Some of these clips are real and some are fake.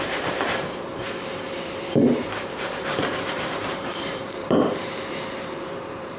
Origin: fake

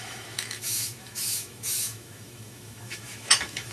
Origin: fake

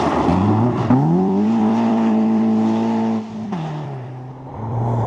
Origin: fake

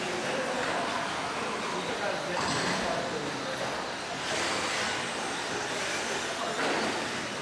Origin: real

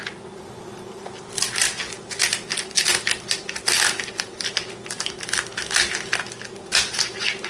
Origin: real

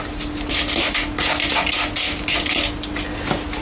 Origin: real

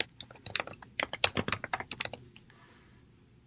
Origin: real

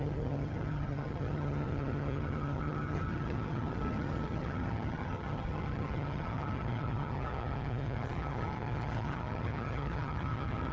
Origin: fake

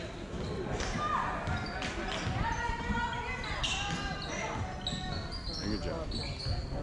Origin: real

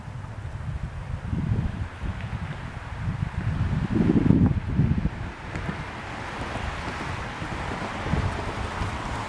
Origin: real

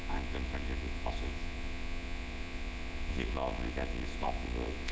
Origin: fake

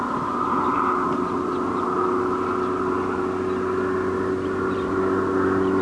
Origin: real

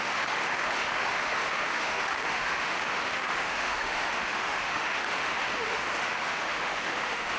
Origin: fake